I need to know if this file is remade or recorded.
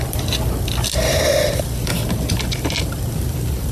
remade